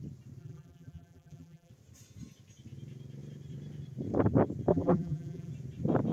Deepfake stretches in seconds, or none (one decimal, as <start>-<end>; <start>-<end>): 0.4-1.7; 4.7-5.5